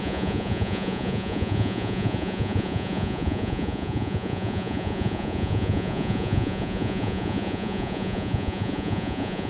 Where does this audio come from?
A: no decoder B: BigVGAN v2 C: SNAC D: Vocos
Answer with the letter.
D